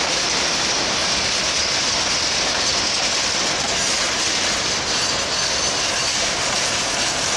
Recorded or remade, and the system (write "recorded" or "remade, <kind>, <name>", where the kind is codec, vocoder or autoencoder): recorded